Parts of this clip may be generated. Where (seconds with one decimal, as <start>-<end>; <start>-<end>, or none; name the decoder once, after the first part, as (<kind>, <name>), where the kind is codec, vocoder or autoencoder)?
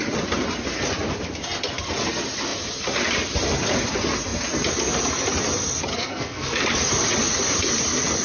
5.9-6.6 (codec, SNAC)